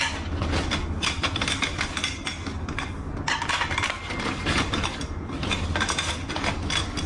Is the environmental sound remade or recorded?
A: recorded